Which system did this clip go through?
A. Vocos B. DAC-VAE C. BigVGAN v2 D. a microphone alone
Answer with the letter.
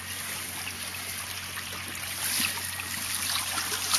D